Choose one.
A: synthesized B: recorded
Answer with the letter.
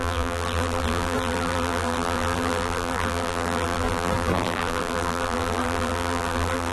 A